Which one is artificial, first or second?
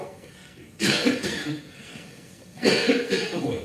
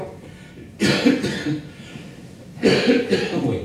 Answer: first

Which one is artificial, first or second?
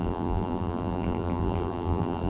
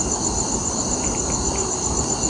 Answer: first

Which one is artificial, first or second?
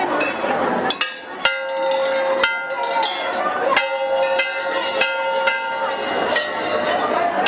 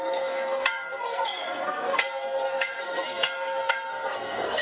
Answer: second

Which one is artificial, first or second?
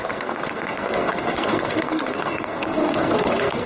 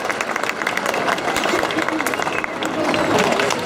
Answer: first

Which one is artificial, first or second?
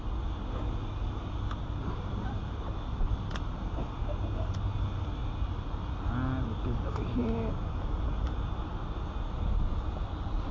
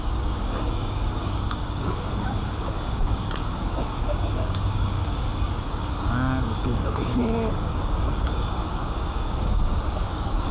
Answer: second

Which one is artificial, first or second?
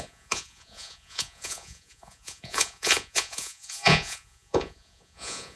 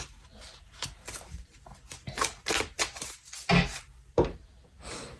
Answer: first